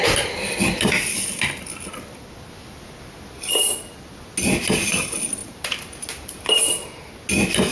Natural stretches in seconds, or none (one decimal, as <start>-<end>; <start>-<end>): 0.0-5.4; 7.2-7.7